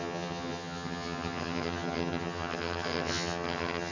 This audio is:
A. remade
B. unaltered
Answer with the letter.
A